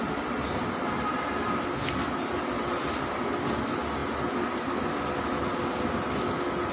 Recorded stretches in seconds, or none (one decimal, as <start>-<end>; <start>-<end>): 0.0-6.7